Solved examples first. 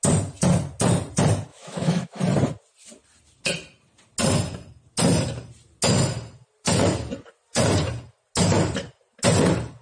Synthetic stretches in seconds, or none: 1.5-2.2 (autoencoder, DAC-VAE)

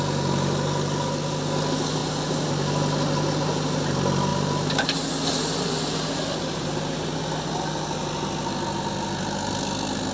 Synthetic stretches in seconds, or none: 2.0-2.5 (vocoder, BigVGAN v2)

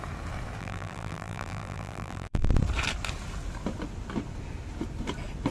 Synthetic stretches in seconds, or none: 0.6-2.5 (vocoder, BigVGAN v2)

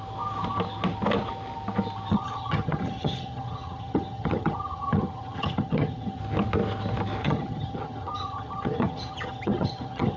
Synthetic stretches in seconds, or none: 2.1-6.2 (vocoder, HiFi-GAN); 7.2-10.2